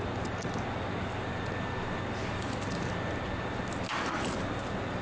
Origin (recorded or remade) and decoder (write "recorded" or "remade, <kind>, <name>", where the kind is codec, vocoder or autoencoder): recorded